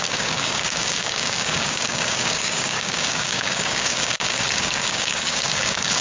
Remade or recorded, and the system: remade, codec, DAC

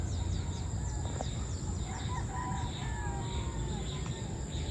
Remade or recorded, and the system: recorded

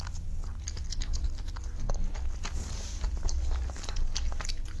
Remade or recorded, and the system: recorded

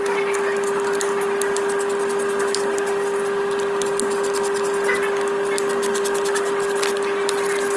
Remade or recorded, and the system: recorded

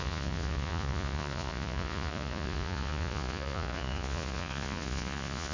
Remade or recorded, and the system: remade, vocoder, Vocos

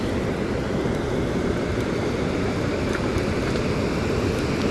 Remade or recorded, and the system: recorded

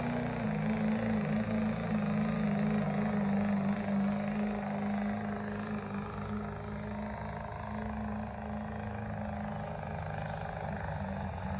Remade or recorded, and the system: recorded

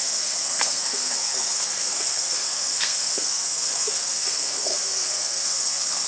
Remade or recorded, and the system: remade, codec, SNAC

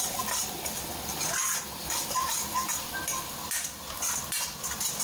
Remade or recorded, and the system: remade, vocoder, BigVGAN v2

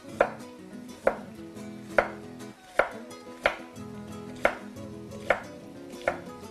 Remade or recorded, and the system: recorded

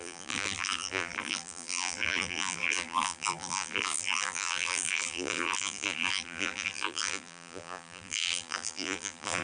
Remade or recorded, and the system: remade, vocoder, BigVGAN v2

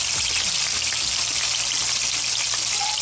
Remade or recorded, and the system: recorded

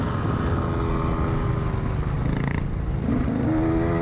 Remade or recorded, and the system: recorded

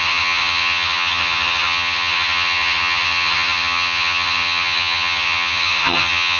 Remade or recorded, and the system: remade, vocoder, HiFi-GAN